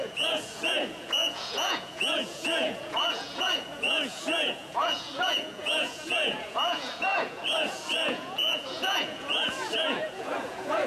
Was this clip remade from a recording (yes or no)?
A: yes